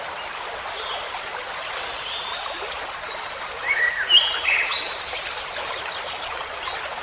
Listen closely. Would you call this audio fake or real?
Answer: real